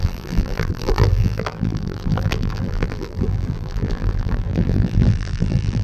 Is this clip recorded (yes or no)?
no